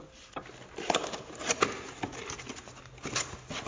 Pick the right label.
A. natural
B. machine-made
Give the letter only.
A